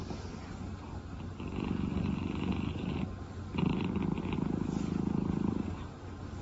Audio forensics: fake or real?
real